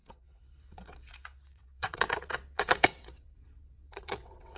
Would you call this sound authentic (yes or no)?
no